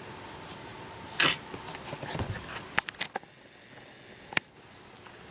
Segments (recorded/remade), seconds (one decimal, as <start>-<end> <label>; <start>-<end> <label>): 0.0-5.3 recorded